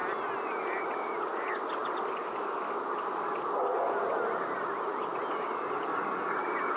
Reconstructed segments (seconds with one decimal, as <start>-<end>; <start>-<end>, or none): none